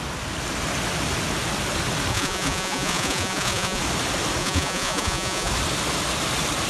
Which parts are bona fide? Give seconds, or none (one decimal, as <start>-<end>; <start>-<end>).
0.0-2.1; 3.8-4.4; 5.5-6.7